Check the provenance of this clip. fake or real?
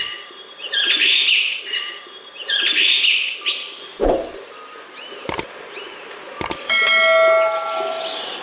real